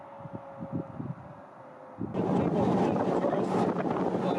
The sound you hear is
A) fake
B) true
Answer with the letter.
B